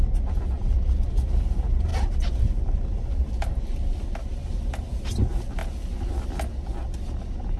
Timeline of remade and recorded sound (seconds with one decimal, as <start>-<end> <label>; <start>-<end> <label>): 0.0-7.6 recorded